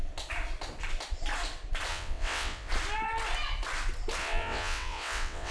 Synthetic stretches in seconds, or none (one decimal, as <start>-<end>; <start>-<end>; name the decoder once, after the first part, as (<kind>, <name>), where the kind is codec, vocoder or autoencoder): 1.9-2.7 (vocoder, WaveNeXt); 4.2-5.5